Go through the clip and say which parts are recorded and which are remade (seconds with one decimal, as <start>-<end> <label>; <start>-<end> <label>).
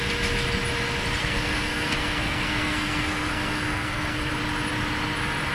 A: 0.0-1.2 recorded; 1.2-4.3 remade; 4.3-5.5 recorded